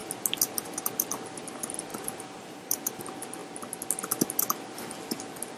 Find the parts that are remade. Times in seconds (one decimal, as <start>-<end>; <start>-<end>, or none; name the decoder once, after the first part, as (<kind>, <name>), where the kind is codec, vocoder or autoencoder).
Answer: 1.9-3.0 (vocoder, BigVGAN v2)